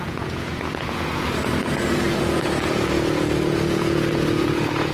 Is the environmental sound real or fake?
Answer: fake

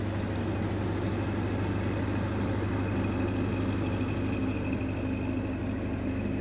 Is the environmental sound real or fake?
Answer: real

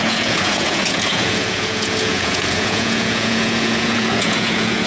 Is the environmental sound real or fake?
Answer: fake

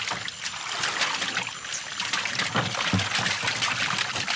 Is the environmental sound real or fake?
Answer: real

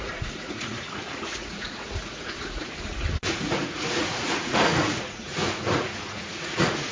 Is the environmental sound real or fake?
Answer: fake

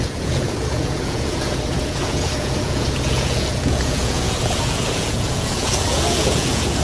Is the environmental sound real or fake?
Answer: fake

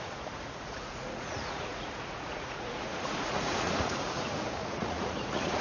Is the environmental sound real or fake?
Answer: fake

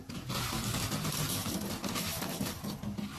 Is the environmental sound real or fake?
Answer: real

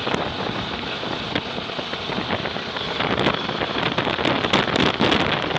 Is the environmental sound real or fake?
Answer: real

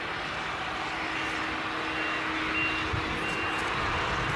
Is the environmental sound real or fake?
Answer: real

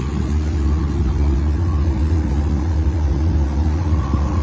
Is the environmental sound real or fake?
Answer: fake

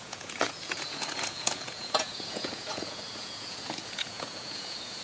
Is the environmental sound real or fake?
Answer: fake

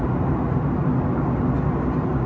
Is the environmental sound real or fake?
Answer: real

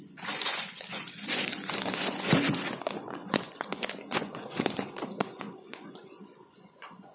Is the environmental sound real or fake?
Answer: fake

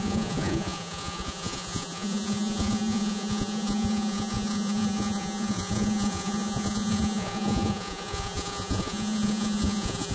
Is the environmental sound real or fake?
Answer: fake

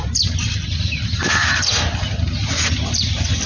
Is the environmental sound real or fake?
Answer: real